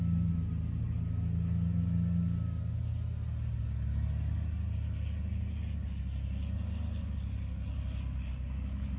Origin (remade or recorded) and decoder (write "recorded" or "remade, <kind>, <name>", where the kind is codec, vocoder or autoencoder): recorded